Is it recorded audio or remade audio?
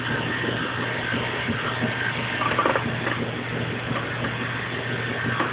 recorded